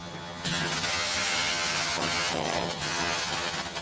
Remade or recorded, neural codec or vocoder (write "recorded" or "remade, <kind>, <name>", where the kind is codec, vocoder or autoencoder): remade, vocoder, HiFi-GAN